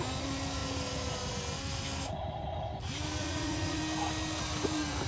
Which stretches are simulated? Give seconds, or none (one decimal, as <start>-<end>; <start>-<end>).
3.2-3.8

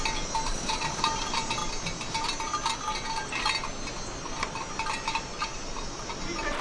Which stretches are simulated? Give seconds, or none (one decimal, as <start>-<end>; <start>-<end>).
0.5-1.0

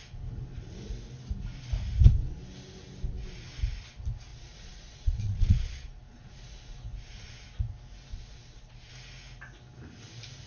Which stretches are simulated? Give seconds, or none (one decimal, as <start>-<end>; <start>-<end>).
4.3-6.6; 8.1-8.9

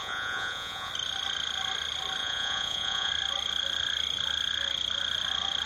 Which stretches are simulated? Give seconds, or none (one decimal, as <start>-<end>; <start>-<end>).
0.0-0.9; 2.2-3.1

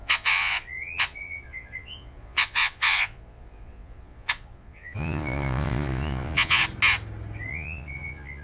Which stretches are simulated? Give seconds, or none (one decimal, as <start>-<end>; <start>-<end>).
0.0-6.6; 7.5-8.4

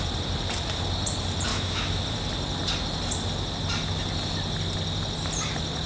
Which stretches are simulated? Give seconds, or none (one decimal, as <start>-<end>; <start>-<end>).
1.5-2.0

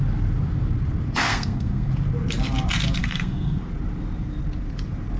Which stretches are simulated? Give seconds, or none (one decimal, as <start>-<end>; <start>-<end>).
1.3-1.9; 3.0-3.6

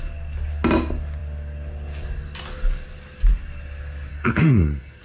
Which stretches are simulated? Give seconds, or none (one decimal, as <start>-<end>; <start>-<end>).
4.1-5.0